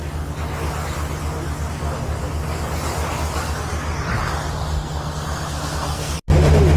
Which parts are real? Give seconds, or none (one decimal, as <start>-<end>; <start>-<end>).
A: 0.0-4.7; 6.1-6.8

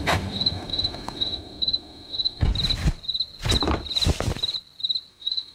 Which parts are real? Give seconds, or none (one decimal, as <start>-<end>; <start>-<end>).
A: 2.5-5.1

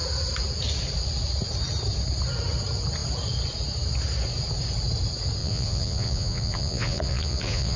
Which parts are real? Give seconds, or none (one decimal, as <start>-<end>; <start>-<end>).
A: 0.0-5.4

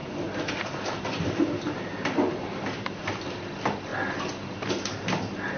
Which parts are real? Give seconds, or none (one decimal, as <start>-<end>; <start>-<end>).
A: 3.4-5.6

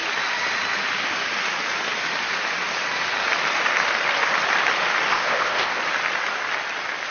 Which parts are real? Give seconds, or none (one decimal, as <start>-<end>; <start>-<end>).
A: 0.0-5.1; 5.8-7.1

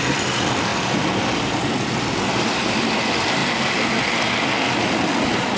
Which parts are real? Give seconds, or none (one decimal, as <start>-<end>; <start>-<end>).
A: 0.0-5.6